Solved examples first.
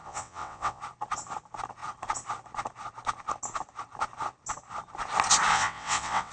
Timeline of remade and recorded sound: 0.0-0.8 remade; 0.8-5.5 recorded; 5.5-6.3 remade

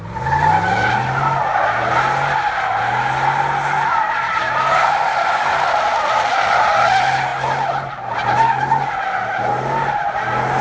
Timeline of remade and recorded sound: 0.0-10.6 recorded

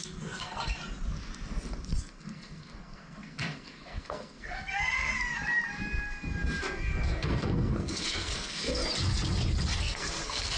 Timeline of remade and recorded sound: 0.0-0.8 remade; 0.8-2.0 recorded; 2.0-5.1 remade; 5.1-6.6 recorded; 6.6-8.8 remade; 8.8-9.8 recorded; 9.8-10.6 remade